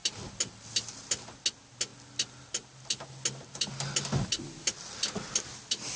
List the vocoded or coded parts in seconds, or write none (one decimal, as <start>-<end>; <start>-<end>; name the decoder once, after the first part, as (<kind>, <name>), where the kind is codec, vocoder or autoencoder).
0.0-1.4 (vocoder, BigVGAN v2); 1.9-5.1

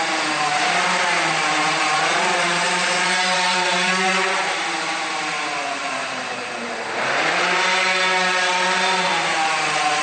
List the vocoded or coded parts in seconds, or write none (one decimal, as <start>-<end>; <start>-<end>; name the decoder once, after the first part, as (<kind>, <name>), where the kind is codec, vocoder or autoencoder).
1.8-5.1 (vocoder, BigVGAN v2); 5.8-7.1